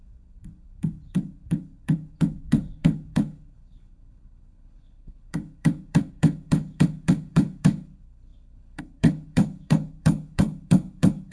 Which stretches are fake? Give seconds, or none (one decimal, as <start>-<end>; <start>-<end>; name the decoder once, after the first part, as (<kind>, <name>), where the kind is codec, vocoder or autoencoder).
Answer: 0.0-11.3 (codec, HILCodec)